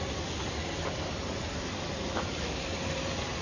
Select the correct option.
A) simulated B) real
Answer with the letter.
B